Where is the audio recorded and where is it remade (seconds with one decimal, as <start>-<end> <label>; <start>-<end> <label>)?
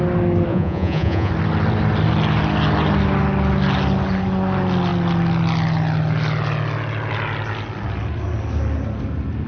0.0-0.5 recorded; 0.5-1.3 remade; 1.3-9.5 recorded